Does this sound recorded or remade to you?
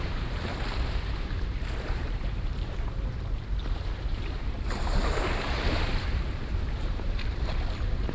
remade